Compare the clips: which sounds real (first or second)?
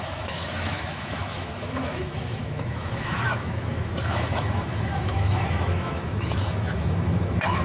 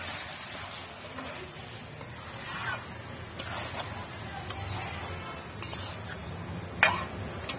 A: second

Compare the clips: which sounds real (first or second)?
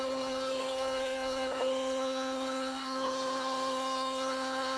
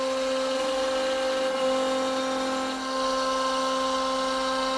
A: second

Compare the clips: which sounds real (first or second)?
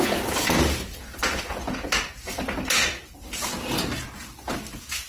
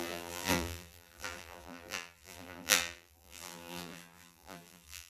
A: first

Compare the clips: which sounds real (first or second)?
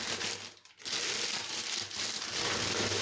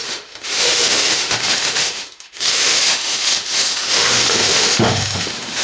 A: first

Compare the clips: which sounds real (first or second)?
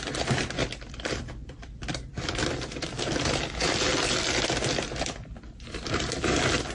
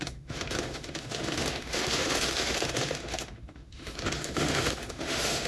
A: first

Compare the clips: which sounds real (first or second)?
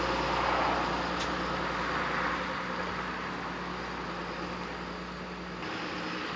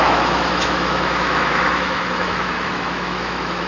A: first